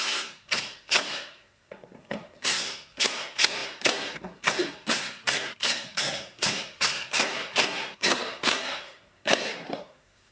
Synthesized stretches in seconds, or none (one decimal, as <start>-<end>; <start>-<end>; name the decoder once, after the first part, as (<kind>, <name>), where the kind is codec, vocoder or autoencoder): 0.0-10.3 (codec, SNAC)